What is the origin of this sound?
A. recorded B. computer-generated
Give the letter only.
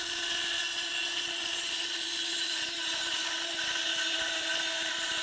A